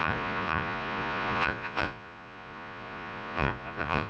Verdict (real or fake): fake